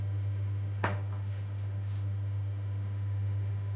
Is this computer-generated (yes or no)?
yes